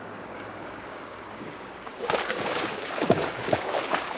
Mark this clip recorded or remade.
remade